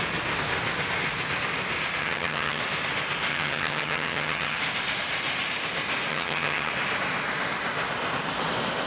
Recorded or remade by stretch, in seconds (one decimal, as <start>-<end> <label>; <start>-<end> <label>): 0.0-2.0 recorded; 2.0-2.6 remade; 2.6-3.3 recorded; 3.3-4.6 remade; 4.6-6.1 recorded; 6.1-6.7 remade; 6.7-8.9 recorded